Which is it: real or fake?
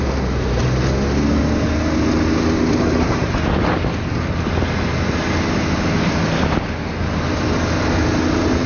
real